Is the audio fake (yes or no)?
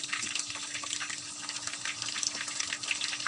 no